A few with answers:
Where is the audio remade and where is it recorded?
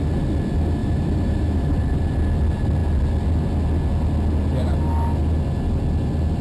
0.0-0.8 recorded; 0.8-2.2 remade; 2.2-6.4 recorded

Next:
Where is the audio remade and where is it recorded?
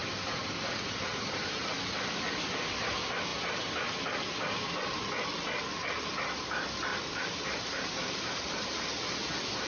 0.0-1.7 remade; 1.7-6.9 recorded; 6.9-7.9 remade; 7.9-9.7 recorded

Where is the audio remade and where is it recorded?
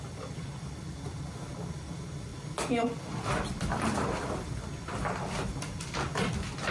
0.0-2.3 recorded; 2.3-6.3 remade; 6.3-6.7 recorded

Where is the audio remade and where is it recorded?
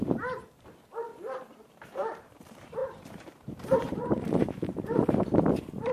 0.0-5.9 remade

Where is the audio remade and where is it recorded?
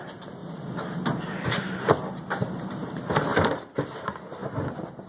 0.0-0.4 recorded; 0.4-2.0 remade; 2.0-3.3 recorded; 3.3-4.0 remade; 4.0-5.1 recorded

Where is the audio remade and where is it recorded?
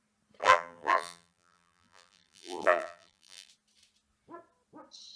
0.0-0.4 recorded; 0.4-3.5 remade; 3.5-5.2 recorded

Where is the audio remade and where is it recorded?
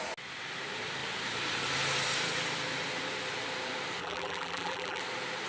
0.0-4.0 recorded; 4.0-5.0 remade; 5.0-5.5 recorded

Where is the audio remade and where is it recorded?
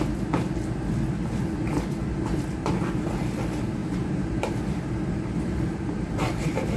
0.0-2.0 recorded; 2.0-2.7 remade; 2.7-3.8 recorded; 3.8-6.8 remade